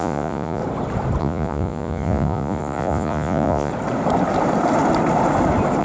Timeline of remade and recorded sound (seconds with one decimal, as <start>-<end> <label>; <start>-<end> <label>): 0.0-0.6 remade; 0.6-1.2 recorded; 1.2-3.7 remade; 3.7-5.8 recorded